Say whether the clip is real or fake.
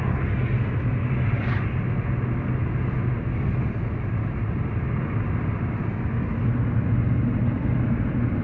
real